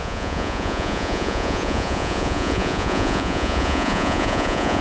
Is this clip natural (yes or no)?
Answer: no